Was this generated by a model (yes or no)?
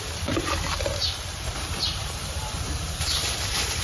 yes